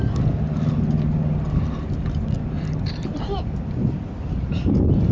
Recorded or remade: recorded